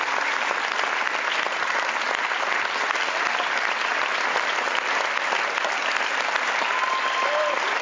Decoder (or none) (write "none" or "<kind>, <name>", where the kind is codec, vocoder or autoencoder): none